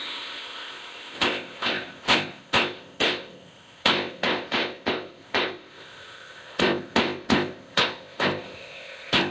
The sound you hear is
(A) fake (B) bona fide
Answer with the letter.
A